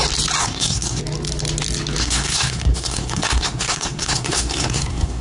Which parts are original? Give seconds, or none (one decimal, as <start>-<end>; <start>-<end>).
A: 0.0-0.4; 1.0-2.0